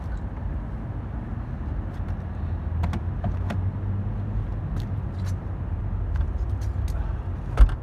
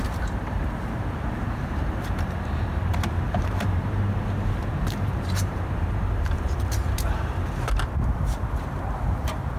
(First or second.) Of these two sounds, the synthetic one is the second